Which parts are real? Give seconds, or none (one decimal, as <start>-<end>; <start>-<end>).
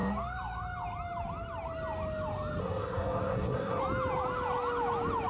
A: 0.0-2.6; 3.8-5.3